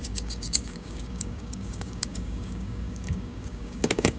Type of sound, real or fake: fake